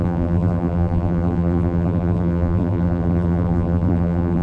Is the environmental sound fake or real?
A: fake